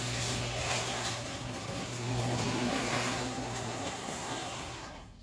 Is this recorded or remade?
remade